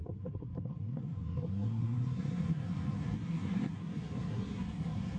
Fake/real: fake